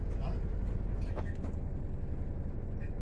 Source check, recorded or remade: recorded